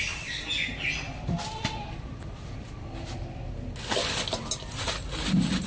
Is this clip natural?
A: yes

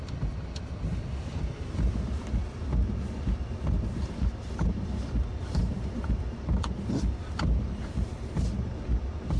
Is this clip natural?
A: yes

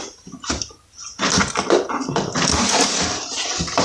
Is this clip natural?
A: yes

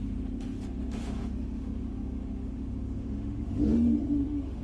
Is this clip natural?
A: no